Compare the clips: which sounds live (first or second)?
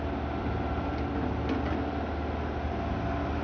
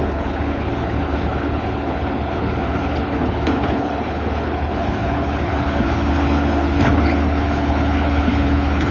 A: first